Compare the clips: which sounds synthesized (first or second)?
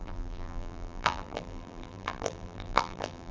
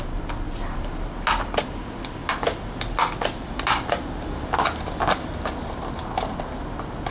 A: first